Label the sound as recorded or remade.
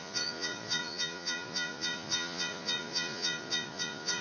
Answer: remade